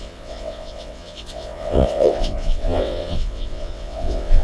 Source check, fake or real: fake